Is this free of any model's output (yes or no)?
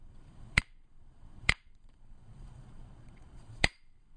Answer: no